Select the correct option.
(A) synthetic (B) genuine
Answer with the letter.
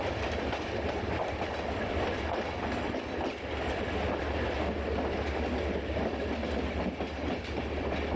B